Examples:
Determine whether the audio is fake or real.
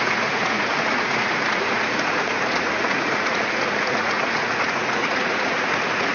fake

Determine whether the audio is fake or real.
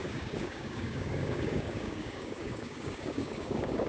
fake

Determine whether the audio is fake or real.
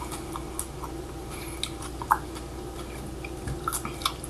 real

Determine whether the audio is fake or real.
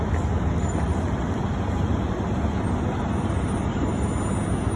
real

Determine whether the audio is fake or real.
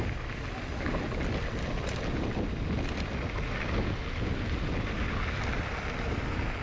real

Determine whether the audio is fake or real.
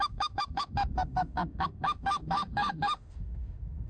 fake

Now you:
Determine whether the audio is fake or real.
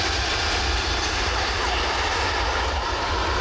real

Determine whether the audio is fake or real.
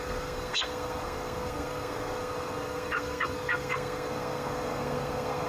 fake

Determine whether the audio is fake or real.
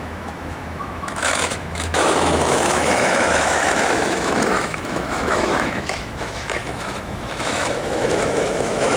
fake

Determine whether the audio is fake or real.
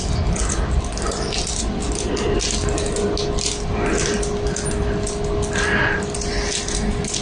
real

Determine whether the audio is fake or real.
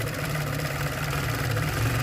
fake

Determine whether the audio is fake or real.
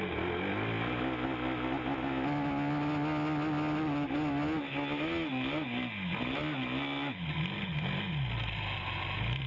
real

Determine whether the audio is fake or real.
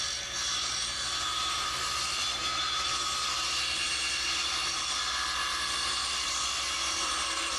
fake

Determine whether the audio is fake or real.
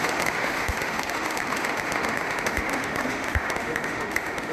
fake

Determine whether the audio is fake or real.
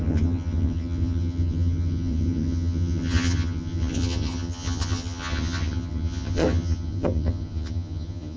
fake